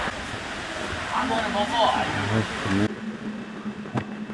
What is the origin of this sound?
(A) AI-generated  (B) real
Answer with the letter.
B